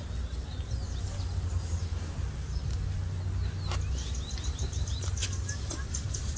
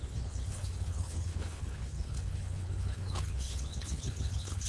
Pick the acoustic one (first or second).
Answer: first